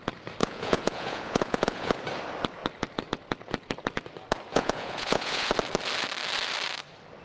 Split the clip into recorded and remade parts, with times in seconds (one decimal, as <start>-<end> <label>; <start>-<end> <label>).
0.0-0.4 recorded; 0.4-2.0 remade; 2.0-4.5 recorded; 4.5-5.5 remade; 5.5-7.2 recorded